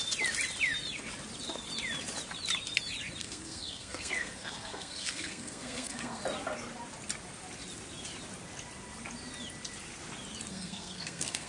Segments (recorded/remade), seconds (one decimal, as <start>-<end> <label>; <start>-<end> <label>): 0.0-3.2 recorded; 3.2-6.2 remade; 6.2-10.5 recorded; 10.5-11.5 remade